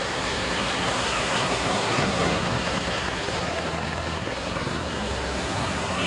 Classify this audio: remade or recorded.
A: remade